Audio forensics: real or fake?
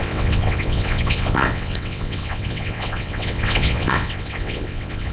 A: fake